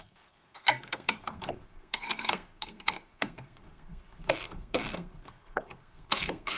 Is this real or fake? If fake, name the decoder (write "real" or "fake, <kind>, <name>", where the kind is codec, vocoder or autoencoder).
fake, codec, SNAC